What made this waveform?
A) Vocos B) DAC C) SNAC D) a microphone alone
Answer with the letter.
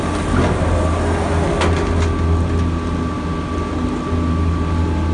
D